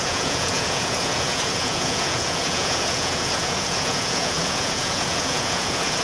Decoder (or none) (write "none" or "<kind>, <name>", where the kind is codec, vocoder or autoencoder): vocoder, Vocos